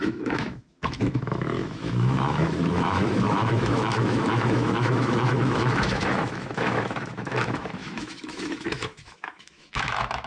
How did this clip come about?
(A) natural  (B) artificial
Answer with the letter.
B